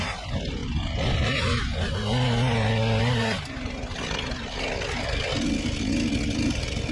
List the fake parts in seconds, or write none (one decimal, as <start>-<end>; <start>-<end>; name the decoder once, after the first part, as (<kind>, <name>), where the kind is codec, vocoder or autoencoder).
none